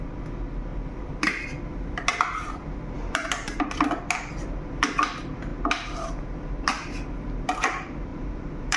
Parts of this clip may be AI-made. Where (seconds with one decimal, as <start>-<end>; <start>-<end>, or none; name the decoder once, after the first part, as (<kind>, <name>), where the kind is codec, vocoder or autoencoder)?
8.1-8.8 (vocoder, BigVGAN v2)